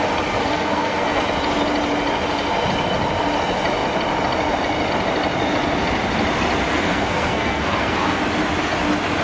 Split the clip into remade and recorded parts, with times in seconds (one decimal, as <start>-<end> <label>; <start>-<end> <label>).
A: 0.0-0.4 recorded; 0.4-1.2 remade; 1.2-6.7 recorded; 6.7-8.2 remade; 8.2-9.2 recorded